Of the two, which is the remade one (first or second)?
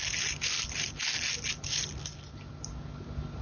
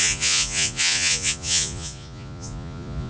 second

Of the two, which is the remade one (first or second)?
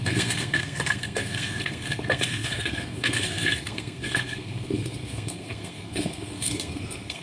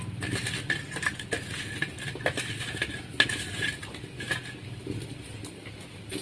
first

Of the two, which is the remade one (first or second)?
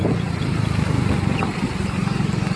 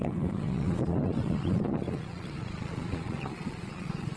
second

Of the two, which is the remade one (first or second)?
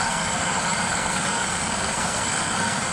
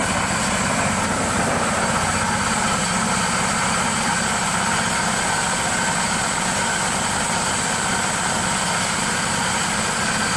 first